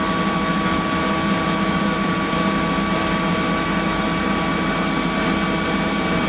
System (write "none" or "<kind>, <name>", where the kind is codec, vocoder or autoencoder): none